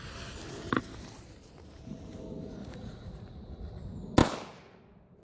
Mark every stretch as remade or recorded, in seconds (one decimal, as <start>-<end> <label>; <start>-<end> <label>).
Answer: 0.0-2.6 recorded; 2.6-3.8 remade; 3.8-5.2 recorded

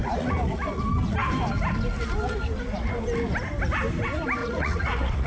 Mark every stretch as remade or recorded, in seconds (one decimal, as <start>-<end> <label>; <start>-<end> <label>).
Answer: 0.0-0.8 remade; 0.8-4.4 recorded; 4.4-5.3 remade

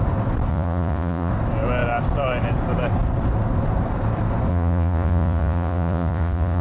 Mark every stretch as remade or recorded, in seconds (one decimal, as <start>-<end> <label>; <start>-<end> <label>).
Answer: 0.0-0.5 recorded; 0.5-1.3 remade; 1.3-4.5 recorded; 4.5-6.6 remade